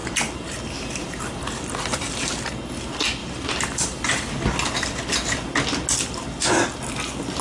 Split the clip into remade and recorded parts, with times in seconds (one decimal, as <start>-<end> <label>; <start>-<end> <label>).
0.0-2.5 remade; 2.5-3.2 recorded; 3.2-4.3 remade; 4.3-7.4 recorded